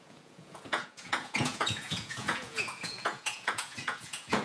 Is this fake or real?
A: fake